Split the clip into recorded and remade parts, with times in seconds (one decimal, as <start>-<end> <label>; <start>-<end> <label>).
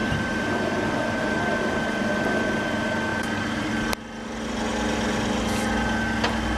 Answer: 0.0-1.6 remade; 1.6-3.1 recorded; 3.1-3.7 remade; 3.7-6.6 recorded